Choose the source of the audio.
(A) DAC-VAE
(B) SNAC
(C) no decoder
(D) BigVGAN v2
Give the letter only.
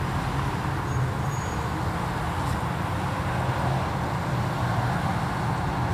C